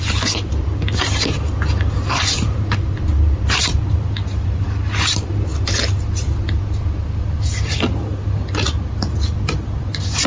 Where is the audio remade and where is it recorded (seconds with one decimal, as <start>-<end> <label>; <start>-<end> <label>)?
0.0-5.5 remade; 5.5-10.3 recorded